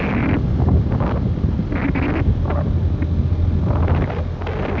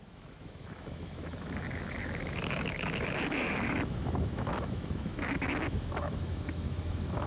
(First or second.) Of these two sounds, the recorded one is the first